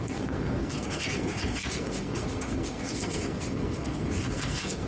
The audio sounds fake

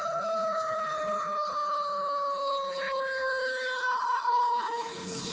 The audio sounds fake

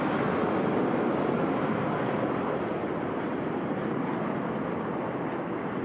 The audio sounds real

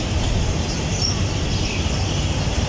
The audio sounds real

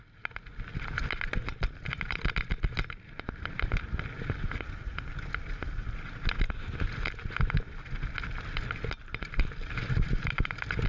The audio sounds real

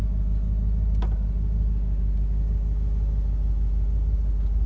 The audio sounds real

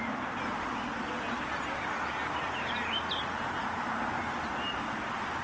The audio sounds real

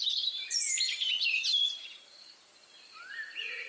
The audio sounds fake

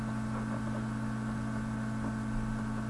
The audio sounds real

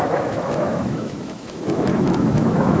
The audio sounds fake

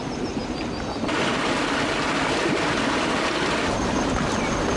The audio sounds real